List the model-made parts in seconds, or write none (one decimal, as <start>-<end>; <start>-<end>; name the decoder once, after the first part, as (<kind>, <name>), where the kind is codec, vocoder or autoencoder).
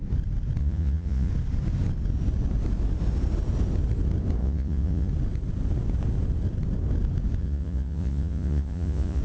0.6-1.3 (vocoder, Vocos); 4.4-5.1; 7.4-9.2